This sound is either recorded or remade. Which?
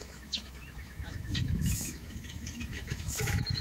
remade